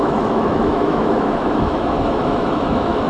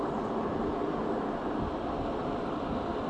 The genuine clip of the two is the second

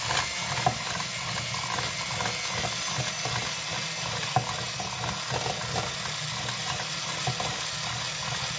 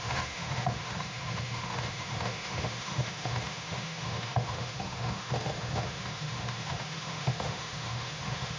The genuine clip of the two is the first